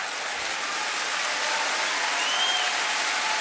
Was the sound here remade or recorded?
recorded